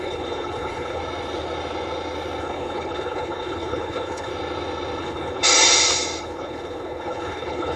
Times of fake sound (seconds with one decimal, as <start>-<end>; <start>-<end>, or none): 0.0-1.0; 2.4-4.3; 5.0-5.4; 6.2-7.8